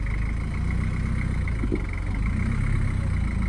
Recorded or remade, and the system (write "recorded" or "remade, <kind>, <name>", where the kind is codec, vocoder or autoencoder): recorded